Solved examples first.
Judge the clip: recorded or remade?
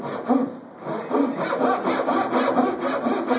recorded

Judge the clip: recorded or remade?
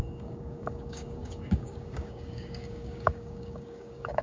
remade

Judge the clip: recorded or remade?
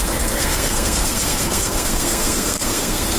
remade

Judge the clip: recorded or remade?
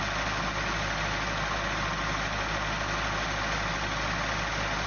recorded